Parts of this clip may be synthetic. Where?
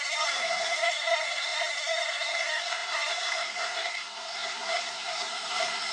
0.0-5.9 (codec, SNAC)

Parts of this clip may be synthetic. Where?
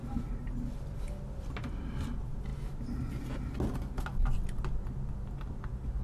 none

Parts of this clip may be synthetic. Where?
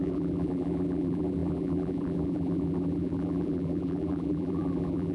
0.0-5.1 (vocoder, BigVGAN v2)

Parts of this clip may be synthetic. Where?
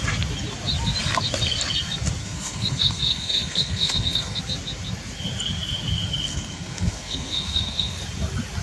2.2-4.4 (codec, SNAC); 6.3-8.0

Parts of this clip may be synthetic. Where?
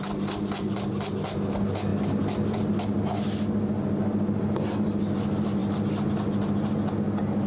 none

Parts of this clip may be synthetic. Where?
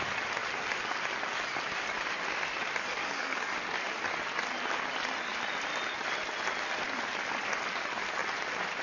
3.0-3.9 (codec, DAC)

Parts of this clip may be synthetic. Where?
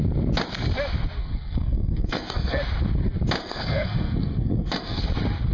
1.2-2.6 (codec, SNAC); 3.4-5.0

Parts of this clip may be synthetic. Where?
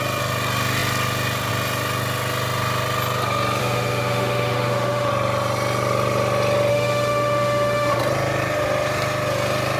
3.6-5.1 (autoencoder, DAC-VAE); 6.7-8.0